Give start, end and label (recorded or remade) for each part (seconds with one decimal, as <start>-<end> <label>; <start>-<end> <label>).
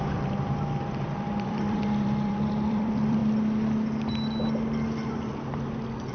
0.0-3.2 remade; 3.2-5.1 recorded; 5.1-6.1 remade